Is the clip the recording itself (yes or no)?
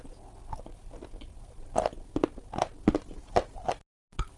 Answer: yes